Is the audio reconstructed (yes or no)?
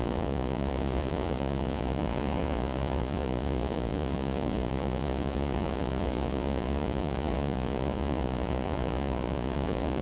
yes